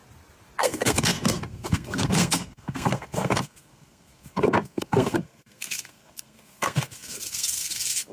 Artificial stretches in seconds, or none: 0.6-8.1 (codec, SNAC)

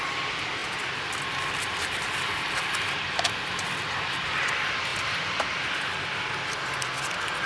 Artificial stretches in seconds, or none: 0.6-1.2 (vocoder, BigVGAN v2); 4.9-5.5

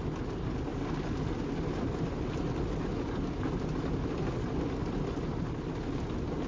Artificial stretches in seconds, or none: none